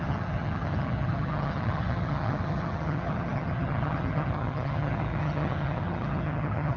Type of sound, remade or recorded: remade